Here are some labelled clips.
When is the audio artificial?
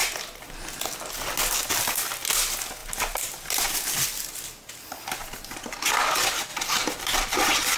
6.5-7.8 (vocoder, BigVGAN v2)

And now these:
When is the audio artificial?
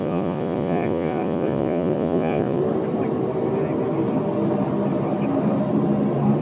0.0-2.6 (vocoder, Vocos)